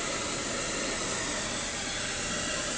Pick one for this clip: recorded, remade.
recorded